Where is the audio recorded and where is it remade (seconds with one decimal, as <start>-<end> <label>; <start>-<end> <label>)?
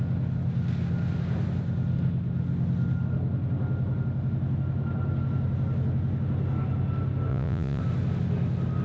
0.0-7.3 recorded; 7.3-7.8 remade; 7.8-8.8 recorded